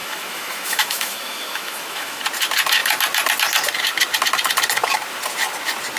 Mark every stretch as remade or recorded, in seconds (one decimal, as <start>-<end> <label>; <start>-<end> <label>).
0.0-2.2 remade; 2.2-6.0 recorded